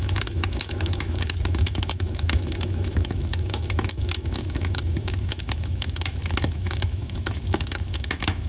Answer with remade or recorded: remade